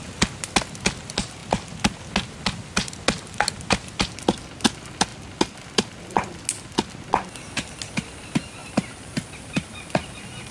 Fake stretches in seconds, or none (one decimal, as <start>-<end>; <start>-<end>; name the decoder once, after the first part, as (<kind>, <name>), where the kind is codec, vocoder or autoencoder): 8.6-10.5 (vocoder, BigVGAN v2)